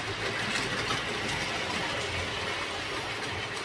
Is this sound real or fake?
real